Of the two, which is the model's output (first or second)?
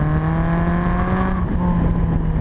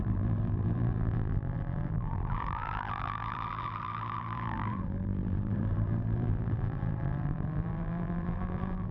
second